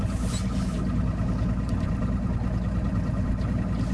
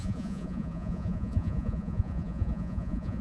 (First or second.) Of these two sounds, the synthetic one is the second